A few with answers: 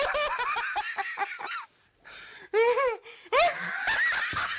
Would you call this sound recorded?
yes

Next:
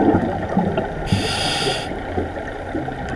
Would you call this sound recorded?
yes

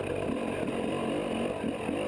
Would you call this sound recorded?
yes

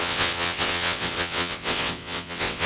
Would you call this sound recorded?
no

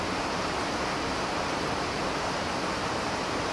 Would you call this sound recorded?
no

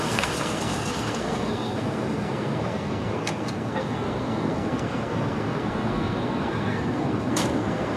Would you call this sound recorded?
no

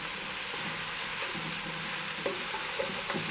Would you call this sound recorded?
yes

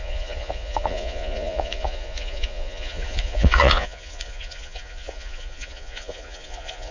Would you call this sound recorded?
no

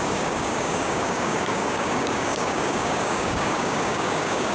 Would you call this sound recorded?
no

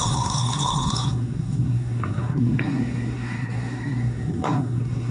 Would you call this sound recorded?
no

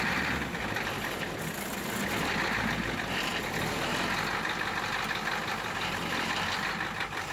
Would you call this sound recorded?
yes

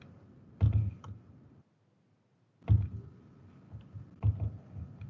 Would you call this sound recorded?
yes